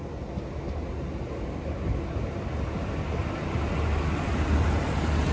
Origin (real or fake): real